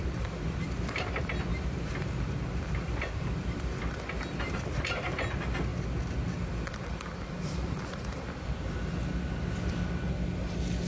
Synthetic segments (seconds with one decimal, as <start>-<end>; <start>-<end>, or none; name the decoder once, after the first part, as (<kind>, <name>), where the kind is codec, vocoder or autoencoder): 1.5-2.2 (vocoder, BigVGAN v2)